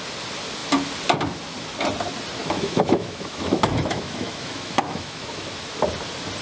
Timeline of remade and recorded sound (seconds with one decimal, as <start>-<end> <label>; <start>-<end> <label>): 0.0-2.4 recorded; 2.4-5.5 remade; 5.5-6.4 recorded